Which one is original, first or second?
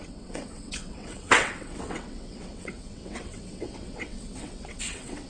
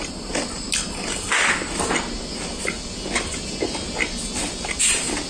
second